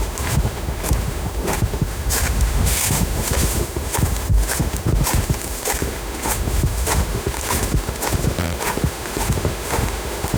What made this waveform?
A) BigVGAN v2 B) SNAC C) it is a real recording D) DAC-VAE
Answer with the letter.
D